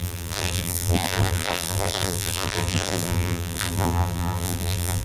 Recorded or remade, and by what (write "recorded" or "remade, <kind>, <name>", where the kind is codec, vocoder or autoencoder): remade, vocoder, BigVGAN v2